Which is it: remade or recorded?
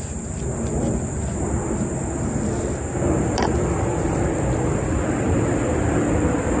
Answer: recorded